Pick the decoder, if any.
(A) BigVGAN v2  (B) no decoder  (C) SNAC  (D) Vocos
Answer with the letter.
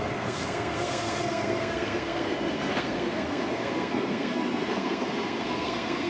C